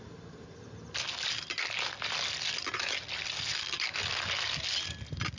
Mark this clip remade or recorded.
recorded